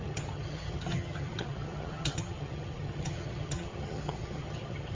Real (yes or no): no